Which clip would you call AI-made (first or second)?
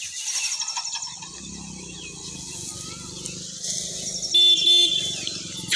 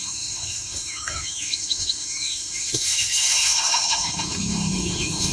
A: second